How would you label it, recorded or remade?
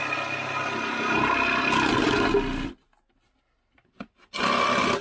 recorded